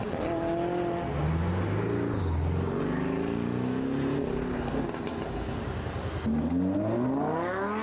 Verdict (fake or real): real